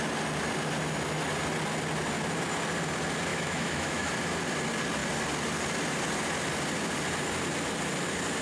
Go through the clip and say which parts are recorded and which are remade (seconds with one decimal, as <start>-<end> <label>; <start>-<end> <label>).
0.0-3.3 recorded; 3.3-4.1 remade; 4.1-8.4 recorded